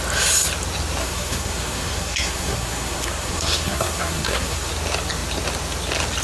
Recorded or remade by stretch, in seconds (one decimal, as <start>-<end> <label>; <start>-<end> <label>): 0.0-1.0 recorded; 1.0-4.7 remade; 4.7-6.2 recorded